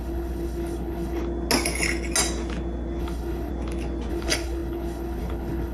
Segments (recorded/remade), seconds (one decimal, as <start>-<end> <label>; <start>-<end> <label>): 0.0-1.2 remade; 1.2-3.0 recorded; 3.0-3.5 remade; 3.5-4.1 recorded; 4.1-5.7 remade